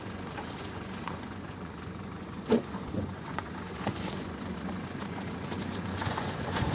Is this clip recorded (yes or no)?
no